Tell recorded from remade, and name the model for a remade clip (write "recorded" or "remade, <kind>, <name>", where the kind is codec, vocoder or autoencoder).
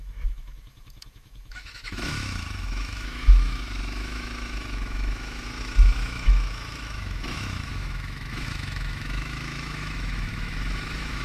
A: remade, autoencoder, DAC-VAE